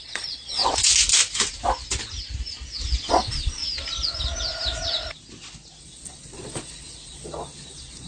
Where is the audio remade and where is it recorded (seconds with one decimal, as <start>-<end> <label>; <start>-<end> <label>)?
0.0-0.6 remade; 0.6-3.1 recorded; 3.1-3.6 remade; 3.6-5.8 recorded; 5.8-8.1 remade